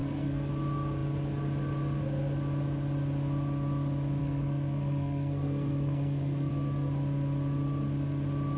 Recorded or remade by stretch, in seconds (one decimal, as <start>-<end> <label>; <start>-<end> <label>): 0.0-0.5 remade; 0.5-4.2 recorded; 4.2-6.5 remade; 6.5-8.6 recorded